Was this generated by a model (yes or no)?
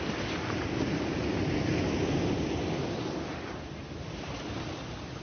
no